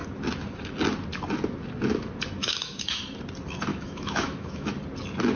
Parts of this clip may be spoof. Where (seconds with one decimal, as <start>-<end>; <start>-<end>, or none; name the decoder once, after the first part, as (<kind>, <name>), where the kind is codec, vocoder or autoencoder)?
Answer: 2.4-3.0 (autoencoder, DAC-VAE); 3.7-4.7